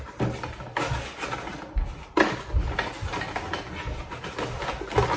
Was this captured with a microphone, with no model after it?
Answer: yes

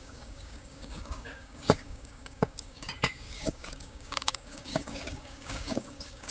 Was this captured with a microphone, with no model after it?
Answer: no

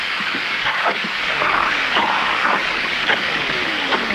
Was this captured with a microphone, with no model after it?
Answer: no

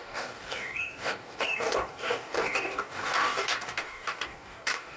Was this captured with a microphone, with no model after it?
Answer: no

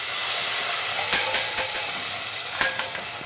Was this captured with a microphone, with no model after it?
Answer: yes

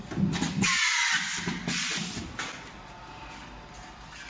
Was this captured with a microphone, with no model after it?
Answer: yes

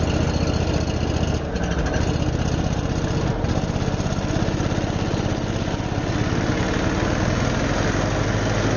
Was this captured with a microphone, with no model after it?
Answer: yes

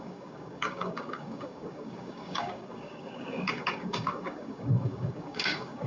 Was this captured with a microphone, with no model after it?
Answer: no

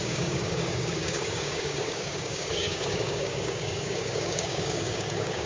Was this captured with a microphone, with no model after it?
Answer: no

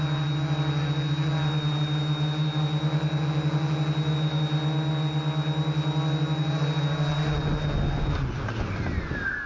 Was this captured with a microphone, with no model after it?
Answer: yes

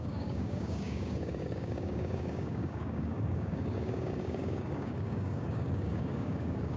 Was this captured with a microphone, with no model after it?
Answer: no